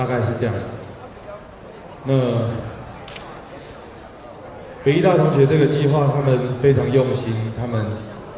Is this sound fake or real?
real